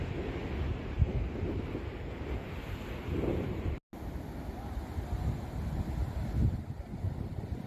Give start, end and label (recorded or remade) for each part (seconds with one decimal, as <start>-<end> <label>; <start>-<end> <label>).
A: 0.0-7.7 recorded